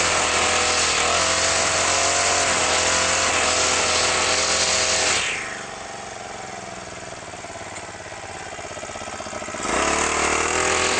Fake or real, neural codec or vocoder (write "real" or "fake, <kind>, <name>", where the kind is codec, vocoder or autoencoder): real